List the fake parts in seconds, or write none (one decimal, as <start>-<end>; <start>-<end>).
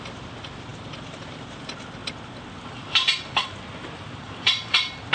0.7-1.6; 2.0-5.1